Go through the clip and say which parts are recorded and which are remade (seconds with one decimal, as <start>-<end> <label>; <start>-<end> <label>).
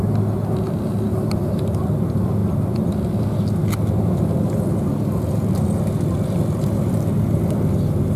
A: 0.0-8.2 recorded